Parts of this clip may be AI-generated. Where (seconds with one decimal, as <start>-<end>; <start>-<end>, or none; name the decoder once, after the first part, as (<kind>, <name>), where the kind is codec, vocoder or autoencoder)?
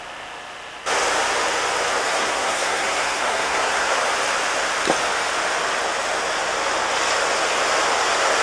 2.0-4.0 (codec, SNAC)